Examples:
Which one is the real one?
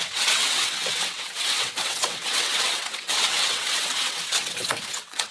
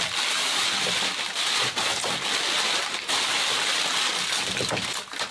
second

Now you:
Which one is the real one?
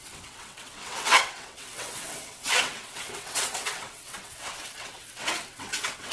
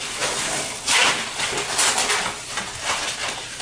second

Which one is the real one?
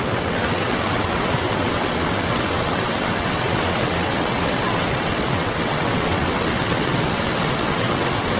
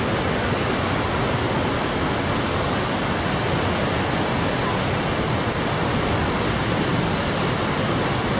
second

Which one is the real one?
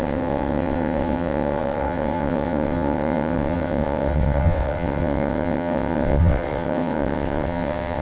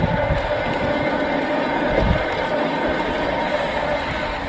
second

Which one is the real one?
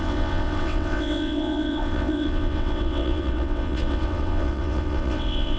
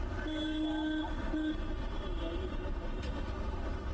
second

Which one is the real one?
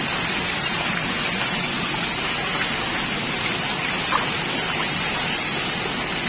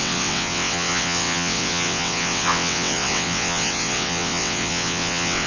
first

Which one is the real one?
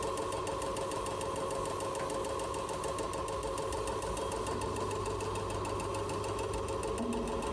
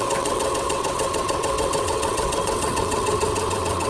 first